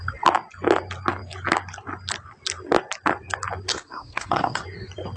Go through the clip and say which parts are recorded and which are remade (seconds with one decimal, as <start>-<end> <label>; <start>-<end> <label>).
0.0-3.7 recorded; 3.7-4.6 remade; 4.6-5.2 recorded